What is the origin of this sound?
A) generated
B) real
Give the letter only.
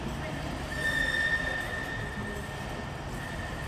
B